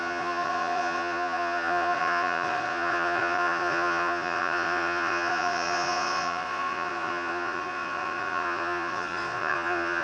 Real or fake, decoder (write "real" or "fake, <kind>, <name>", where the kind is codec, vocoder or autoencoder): fake, vocoder, Vocos